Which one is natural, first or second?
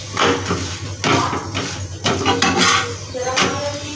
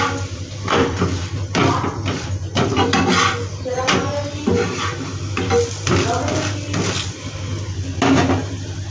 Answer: first